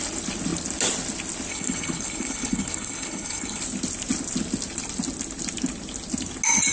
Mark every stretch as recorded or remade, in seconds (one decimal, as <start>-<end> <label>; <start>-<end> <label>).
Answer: 0.0-1.5 recorded; 1.5-3.6 remade; 3.6-6.7 recorded